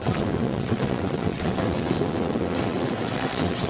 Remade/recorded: remade